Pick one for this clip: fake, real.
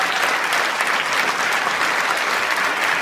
real